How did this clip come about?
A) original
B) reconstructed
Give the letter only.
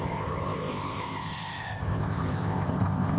B